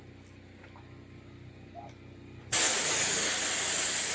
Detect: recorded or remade recorded